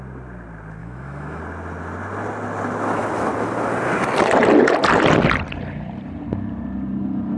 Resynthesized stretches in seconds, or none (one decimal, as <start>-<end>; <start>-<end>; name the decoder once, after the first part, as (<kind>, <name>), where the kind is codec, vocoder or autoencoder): 0.8-1.4 (autoencoder, DAC-VAE)